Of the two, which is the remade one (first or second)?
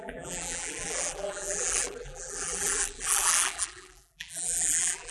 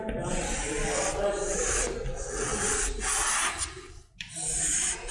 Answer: first